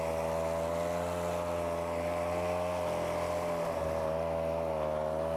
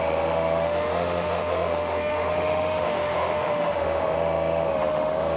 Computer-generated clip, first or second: second